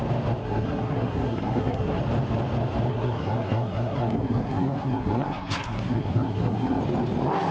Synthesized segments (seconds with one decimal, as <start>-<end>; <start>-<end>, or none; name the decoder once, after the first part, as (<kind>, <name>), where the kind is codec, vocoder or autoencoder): 0.4-2.0 (codec, SNAC); 2.9-6.8